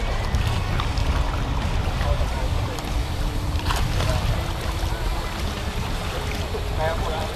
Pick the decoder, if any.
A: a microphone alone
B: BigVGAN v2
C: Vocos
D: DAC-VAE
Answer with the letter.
B